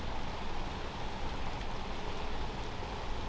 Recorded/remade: recorded